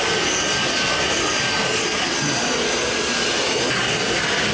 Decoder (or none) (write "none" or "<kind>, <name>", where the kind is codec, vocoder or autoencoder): none